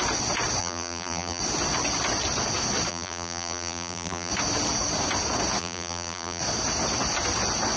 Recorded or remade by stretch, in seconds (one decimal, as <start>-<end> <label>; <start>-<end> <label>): 0.0-0.6 recorded; 0.6-1.4 remade; 1.4-2.9 recorded; 2.9-4.3 remade; 4.3-5.6 recorded; 5.6-6.4 remade; 6.4-7.8 recorded